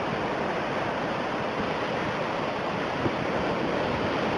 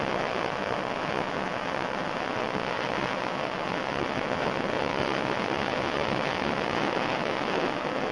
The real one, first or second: first